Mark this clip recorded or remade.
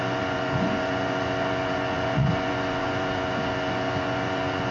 remade